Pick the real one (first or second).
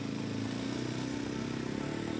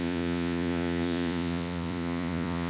first